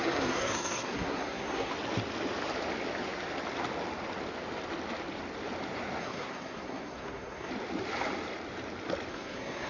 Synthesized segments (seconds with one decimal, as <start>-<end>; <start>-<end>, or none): 0.0-1.7; 6.0-7.5; 9.1-9.7